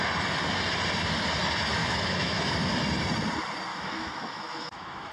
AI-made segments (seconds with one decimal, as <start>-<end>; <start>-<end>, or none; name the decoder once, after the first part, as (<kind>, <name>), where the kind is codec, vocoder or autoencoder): 1.8-2.5 (autoencoder, DAC-VAE); 3.7-5.1

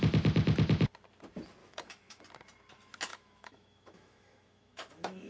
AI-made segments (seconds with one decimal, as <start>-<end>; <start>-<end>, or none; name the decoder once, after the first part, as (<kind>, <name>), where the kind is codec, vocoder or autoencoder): 1.6-2.2 (autoencoder, DAC-VAE); 3.1-5.3